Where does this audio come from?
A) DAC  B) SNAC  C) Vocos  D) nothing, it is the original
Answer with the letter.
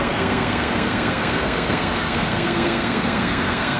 B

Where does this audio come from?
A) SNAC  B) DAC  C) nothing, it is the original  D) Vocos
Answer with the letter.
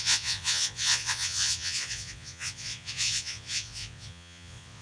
D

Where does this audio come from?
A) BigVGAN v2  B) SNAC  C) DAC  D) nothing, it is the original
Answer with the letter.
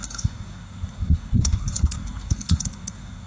B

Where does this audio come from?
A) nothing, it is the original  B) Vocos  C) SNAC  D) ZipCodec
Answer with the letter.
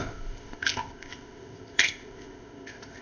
D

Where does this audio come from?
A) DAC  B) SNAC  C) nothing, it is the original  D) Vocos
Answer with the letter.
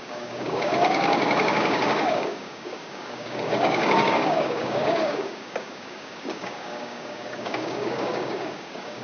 A